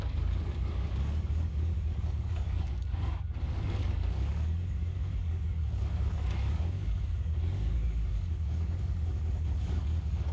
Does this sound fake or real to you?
fake